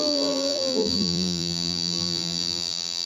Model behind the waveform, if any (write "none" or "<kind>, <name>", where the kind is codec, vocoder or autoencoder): vocoder, BigVGAN v2